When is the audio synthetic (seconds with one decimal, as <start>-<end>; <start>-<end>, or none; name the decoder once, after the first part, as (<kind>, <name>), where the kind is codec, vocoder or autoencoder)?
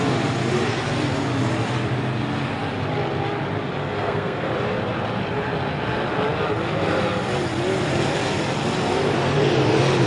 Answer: 3.8-4.5 (codec, SNAC)